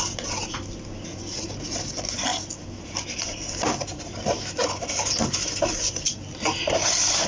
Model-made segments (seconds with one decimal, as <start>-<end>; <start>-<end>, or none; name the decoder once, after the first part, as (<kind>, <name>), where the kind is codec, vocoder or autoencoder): none